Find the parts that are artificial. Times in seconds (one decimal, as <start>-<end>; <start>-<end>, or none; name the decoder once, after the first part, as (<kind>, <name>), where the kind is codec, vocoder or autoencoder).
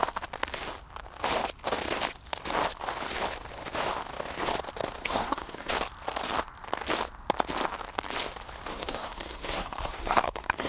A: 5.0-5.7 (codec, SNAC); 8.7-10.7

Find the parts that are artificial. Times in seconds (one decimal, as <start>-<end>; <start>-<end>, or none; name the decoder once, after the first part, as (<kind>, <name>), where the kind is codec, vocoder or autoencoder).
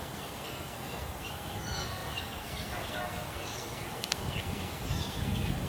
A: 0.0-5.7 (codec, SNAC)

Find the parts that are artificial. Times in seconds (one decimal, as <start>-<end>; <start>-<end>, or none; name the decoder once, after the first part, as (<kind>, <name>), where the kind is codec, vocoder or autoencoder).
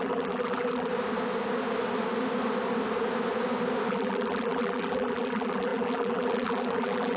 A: 0.0-0.9 (vocoder, BigVGAN v2); 3.9-7.2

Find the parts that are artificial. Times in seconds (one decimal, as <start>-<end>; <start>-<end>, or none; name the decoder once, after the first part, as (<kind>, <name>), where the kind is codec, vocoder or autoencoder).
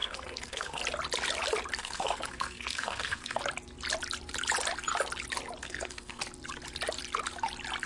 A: 0.0-0.8 (codec, SNAC); 1.8-3.4; 5.6-6.2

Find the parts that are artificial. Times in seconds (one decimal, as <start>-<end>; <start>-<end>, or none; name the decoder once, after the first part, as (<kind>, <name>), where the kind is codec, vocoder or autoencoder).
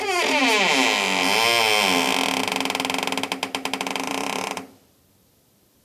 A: 3.9-5.8 (vocoder, BigVGAN v2)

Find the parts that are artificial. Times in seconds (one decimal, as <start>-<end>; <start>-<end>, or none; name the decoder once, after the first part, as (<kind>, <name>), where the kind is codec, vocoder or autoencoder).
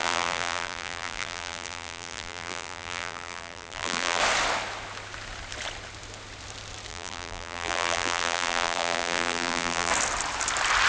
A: 0.0-4.2 (vocoder, BigVGAN v2); 6.9-9.9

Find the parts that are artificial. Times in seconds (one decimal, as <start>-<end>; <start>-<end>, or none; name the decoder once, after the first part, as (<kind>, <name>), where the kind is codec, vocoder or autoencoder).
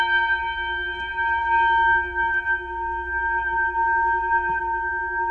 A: none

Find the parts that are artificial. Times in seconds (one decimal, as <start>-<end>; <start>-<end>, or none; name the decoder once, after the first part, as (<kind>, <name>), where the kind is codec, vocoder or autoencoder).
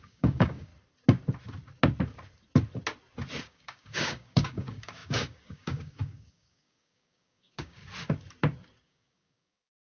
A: 0.0-0.7 (codec, DAC); 3.4-7.8; 8.8-9.9